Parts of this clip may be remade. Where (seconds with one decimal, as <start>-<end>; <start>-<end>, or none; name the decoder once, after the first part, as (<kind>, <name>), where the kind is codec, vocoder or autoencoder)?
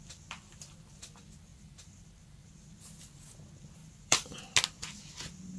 1.5-2.5 (vocoder, BigVGAN v2); 3.8-4.4